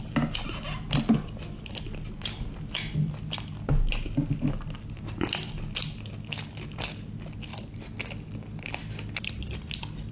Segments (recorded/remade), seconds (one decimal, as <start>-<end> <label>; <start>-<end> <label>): 0.0-10.1 recorded